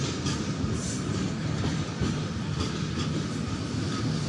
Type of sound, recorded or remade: recorded